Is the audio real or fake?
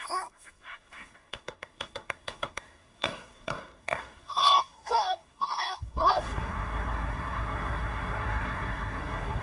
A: fake